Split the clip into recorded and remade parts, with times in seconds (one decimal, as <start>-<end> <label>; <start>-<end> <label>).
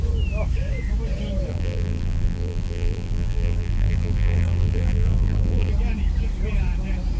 0.0-1.5 recorded; 1.5-5.7 remade; 5.7-7.2 recorded